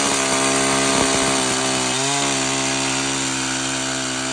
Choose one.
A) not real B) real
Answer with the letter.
B